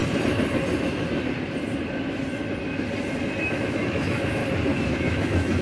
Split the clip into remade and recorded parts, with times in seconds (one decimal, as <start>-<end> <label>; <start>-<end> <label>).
0.0-3.4 recorded; 3.4-4.4 remade; 4.4-4.9 recorded; 4.9-5.6 remade